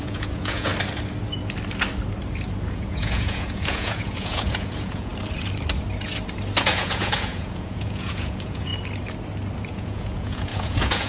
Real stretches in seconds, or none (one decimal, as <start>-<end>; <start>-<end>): 0.7-2.7; 5.1-6.6; 8.7-9.7